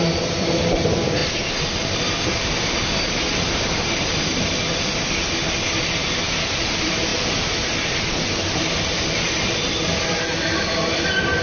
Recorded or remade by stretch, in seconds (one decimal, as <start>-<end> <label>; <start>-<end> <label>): 0.0-11.4 recorded